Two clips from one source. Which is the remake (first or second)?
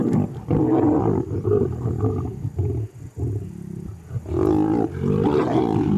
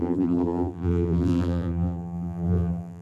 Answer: second